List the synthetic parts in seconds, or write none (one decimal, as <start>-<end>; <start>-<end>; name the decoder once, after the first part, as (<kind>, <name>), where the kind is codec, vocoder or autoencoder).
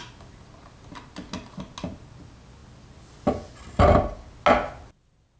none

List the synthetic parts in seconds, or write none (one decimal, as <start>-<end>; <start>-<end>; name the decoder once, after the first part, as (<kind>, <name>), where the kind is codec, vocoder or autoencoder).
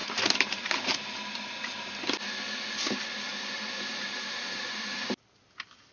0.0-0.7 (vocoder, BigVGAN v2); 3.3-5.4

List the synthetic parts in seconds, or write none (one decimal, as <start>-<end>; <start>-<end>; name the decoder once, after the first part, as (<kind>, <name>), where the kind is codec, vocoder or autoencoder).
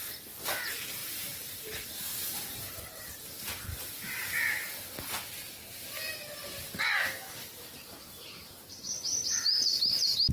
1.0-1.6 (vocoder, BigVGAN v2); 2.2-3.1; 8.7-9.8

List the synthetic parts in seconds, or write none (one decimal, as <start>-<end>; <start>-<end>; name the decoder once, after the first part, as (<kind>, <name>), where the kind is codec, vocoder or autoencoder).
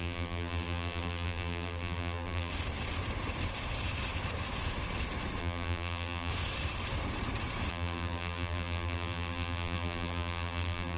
0.0-2.5 (vocoder, BigVGAN v2); 5.4-6.3; 7.7-11.0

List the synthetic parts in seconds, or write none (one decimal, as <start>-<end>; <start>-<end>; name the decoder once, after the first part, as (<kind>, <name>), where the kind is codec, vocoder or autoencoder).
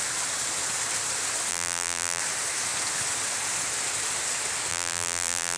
1.5-2.2 (vocoder, BigVGAN v2); 4.7-5.6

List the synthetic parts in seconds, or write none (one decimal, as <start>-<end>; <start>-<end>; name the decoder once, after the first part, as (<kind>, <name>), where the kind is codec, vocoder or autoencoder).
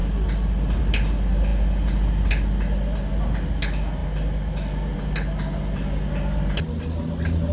none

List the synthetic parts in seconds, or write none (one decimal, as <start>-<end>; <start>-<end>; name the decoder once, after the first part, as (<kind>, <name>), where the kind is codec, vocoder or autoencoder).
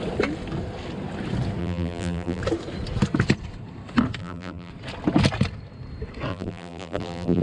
1.6-2.4 (vocoder, BigVGAN v2); 4.2-4.7; 6.3-7.4